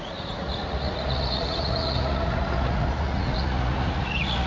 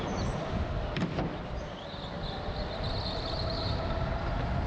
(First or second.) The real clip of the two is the second